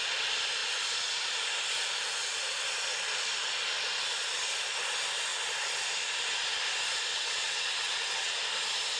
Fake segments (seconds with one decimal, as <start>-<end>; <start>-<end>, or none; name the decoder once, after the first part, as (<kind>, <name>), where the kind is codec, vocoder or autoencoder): 7.1-8.3 (vocoder, WaveNeXt)